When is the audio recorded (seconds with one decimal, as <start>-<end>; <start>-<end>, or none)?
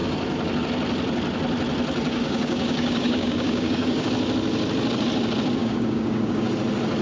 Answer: 0.0-2.1; 4.1-5.6; 6.5-7.0